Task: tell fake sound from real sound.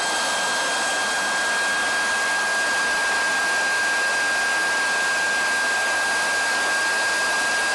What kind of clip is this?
real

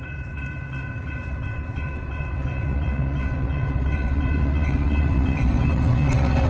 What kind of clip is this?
fake